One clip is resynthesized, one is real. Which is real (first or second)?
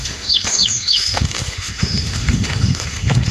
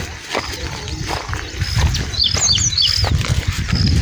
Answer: second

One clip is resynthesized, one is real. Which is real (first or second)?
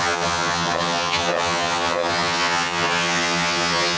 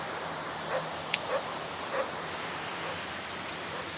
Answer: second